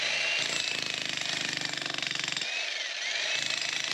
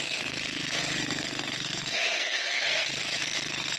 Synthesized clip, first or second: second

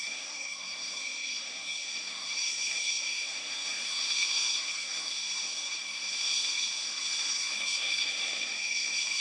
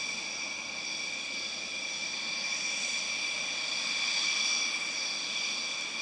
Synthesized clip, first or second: first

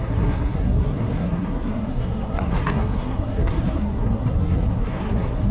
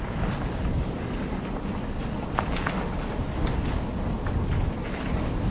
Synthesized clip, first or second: first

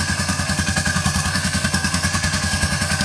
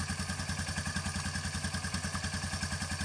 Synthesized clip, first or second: first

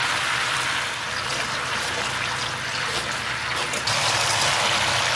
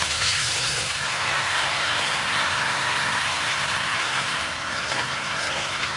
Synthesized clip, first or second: second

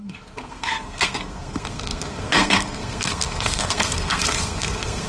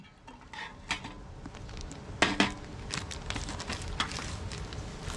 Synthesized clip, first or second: first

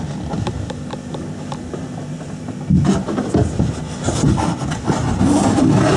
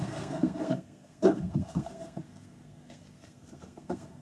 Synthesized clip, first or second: second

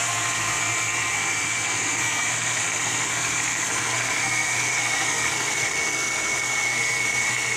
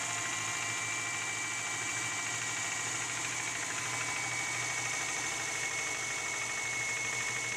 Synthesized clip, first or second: first